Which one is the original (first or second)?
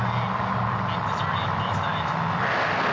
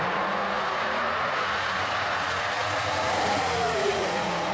first